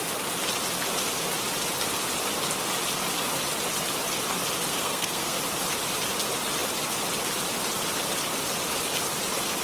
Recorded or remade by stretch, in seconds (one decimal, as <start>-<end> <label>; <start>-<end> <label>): 0.0-4.7 recorded; 4.7-5.4 remade; 5.4-9.6 recorded